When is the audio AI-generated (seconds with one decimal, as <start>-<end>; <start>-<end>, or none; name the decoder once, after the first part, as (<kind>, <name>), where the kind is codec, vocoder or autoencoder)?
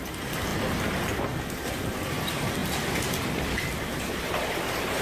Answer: none